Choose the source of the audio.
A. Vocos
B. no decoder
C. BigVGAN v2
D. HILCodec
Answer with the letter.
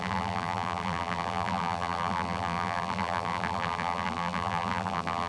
C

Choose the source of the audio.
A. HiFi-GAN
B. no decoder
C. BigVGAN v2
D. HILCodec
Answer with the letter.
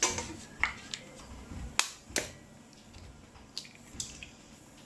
B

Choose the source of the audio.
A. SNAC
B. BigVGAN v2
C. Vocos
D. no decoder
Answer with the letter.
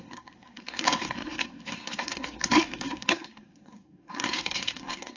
A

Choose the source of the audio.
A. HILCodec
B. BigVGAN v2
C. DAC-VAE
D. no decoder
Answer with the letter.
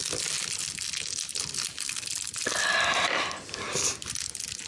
D